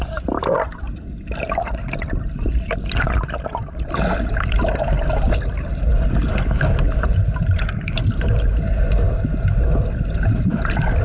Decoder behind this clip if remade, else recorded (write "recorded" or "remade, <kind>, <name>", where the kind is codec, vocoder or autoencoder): recorded